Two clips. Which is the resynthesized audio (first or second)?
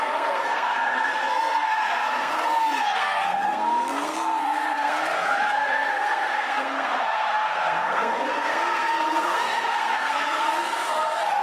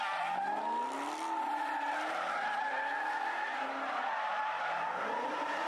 first